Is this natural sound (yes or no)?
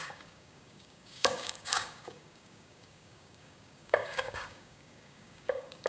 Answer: no